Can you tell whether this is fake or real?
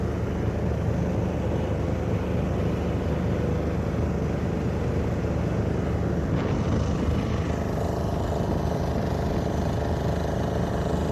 real